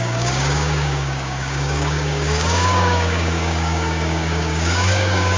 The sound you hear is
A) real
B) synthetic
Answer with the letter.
B